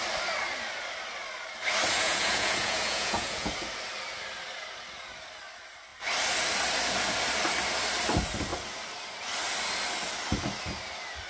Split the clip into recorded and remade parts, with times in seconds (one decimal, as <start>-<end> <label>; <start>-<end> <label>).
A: 0.0-1.9 recorded; 1.9-3.5 remade; 3.5-11.3 recorded